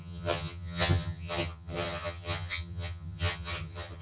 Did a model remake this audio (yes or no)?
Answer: yes